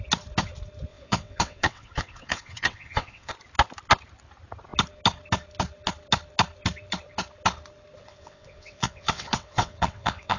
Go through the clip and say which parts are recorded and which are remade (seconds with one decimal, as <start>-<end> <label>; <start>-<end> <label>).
0.0-0.9 recorded; 0.9-3.3 remade; 3.3-8.0 recorded; 8.0-10.4 remade